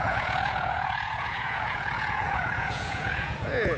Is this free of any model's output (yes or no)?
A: no